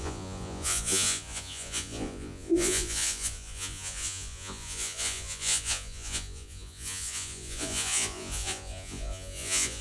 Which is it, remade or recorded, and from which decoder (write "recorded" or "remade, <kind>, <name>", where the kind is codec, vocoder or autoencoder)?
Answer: remade, vocoder, Vocos